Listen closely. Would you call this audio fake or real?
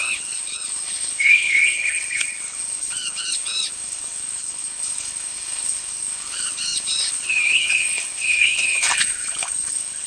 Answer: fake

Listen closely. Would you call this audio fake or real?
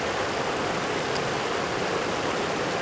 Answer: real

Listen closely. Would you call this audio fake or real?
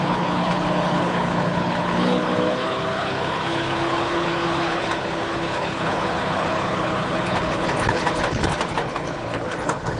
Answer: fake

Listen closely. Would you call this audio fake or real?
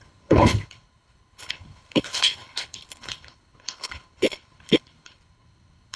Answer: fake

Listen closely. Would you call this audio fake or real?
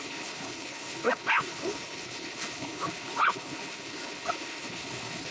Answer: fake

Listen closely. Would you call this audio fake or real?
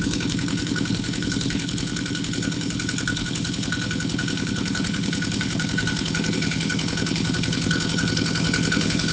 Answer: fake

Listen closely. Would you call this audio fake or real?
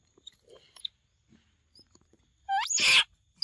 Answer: real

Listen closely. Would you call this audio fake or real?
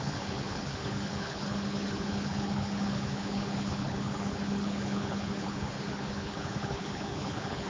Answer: fake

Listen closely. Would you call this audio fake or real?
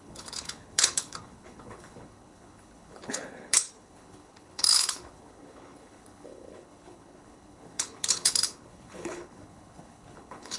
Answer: fake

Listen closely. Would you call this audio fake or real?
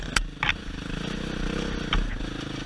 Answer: real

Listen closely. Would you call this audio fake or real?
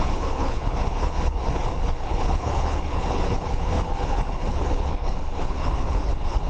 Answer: fake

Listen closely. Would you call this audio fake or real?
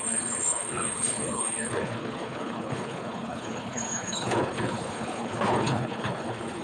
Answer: fake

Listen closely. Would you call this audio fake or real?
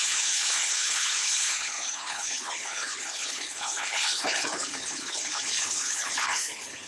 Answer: fake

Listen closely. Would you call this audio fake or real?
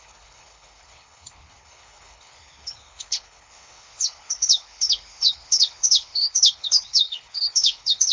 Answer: fake